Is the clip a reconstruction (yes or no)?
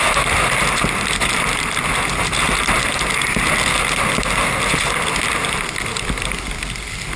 no